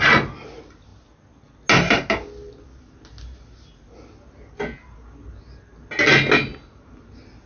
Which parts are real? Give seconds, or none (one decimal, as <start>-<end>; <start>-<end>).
0.0-7.5